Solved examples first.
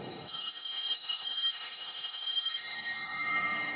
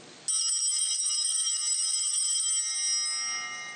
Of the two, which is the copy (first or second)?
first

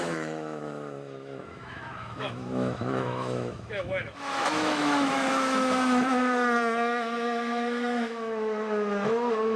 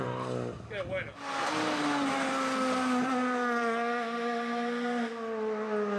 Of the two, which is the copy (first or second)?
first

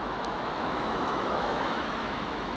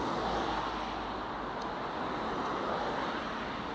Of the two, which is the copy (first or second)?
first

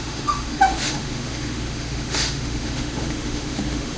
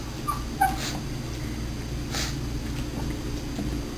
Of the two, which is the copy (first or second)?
first